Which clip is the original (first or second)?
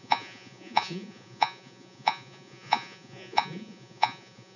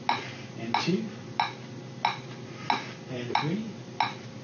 second